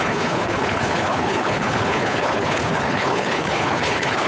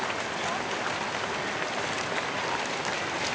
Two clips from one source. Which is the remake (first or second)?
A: first